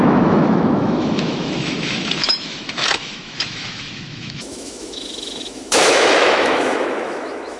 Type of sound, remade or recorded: remade